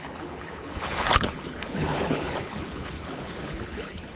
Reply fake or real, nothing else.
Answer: fake